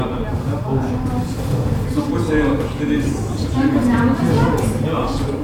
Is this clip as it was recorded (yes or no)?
yes